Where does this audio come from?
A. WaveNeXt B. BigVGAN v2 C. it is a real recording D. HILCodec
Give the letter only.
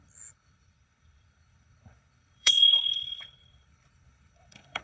D